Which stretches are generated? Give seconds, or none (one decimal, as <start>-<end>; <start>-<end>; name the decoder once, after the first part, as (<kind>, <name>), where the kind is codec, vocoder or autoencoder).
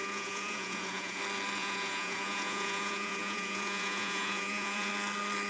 0.0-1.2 (vocoder, Vocos); 1.6-4.9